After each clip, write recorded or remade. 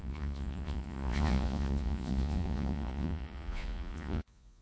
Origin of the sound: remade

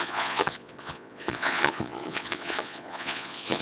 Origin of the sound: remade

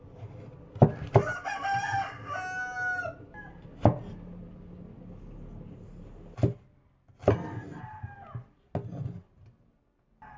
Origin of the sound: recorded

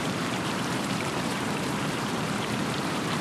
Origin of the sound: remade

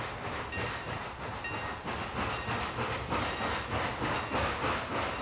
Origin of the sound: recorded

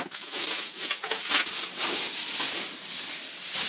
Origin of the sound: recorded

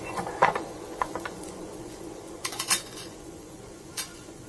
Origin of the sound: remade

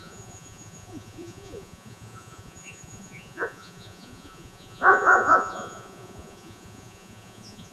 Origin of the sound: remade